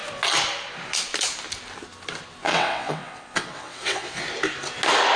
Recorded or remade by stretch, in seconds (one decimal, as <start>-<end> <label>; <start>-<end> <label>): 0.0-2.4 recorded; 2.4-4.2 remade; 4.2-5.2 recorded